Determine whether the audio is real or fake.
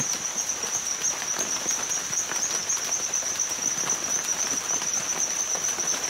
real